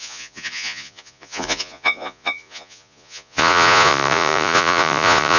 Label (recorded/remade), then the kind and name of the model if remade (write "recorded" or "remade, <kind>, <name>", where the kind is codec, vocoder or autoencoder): remade, vocoder, Vocos